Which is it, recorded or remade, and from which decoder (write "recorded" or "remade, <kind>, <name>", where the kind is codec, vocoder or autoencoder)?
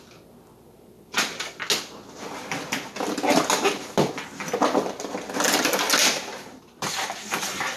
recorded